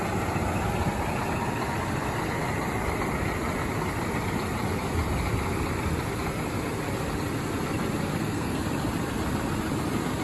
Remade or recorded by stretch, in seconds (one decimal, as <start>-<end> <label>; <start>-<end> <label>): 0.0-8.1 recorded; 8.1-8.6 remade; 8.6-10.2 recorded